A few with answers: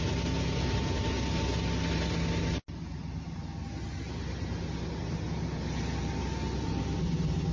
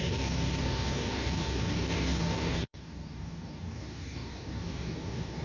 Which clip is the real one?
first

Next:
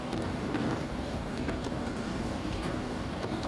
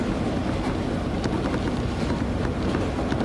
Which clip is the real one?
second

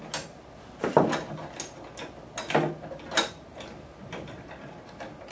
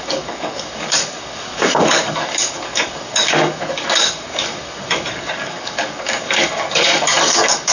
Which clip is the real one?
first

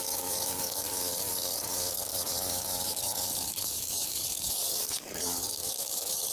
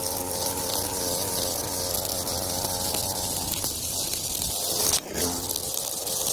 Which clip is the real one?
second